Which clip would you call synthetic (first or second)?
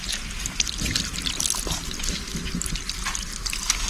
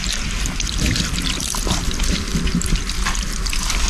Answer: second